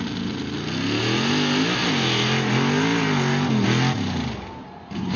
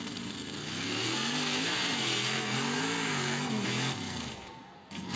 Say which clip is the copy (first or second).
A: second